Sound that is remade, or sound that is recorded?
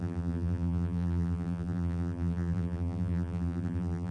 remade